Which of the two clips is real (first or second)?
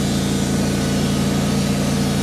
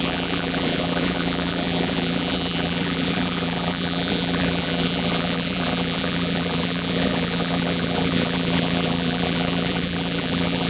first